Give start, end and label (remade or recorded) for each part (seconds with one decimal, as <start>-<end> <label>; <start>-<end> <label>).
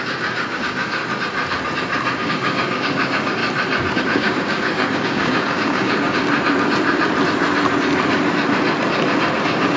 0.0-1.0 remade; 1.0-2.2 recorded; 2.2-3.4 remade; 3.4-4.0 recorded; 4.0-6.2 remade; 6.2-9.4 recorded; 9.4-9.8 remade